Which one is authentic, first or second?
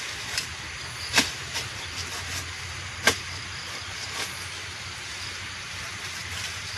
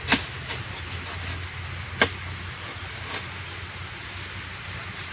second